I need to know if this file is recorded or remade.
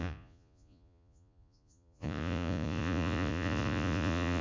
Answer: remade